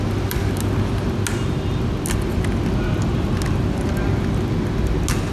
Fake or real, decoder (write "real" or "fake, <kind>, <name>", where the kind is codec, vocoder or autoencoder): real